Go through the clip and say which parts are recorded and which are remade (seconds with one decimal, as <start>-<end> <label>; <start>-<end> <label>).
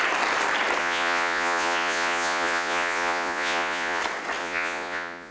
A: 0.0-0.8 recorded; 0.8-4.0 remade; 4.0-4.4 recorded; 4.4-5.3 remade